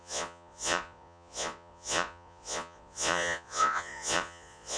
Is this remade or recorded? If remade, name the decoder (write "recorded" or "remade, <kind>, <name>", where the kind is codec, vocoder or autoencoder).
remade, vocoder, Vocos